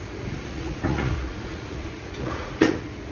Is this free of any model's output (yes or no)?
no